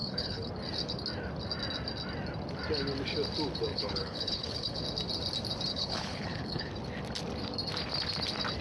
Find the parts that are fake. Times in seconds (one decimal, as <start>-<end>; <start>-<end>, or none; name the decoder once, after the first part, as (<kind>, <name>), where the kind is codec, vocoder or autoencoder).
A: 0.0-0.5 (codec, HILCodec); 3.7-4.8; 5.7-6.7